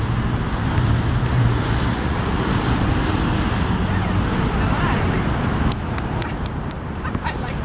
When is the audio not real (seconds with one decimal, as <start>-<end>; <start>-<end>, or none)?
1.9-2.4